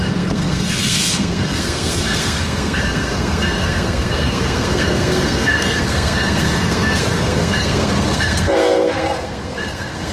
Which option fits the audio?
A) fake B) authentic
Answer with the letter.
A